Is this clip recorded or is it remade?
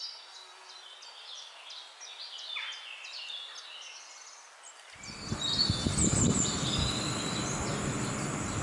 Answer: recorded